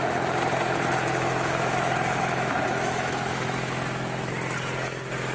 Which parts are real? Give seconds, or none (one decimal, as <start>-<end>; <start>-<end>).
0.0-1.1; 4.3-5.3